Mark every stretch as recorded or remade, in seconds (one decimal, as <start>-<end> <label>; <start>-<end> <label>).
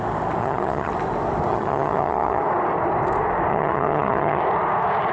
0.0-0.4 recorded; 0.4-0.9 remade; 0.9-1.5 recorded; 1.5-2.4 remade; 2.4-3.5 recorded; 3.5-4.4 remade; 4.4-5.1 recorded